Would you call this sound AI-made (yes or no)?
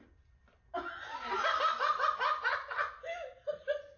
no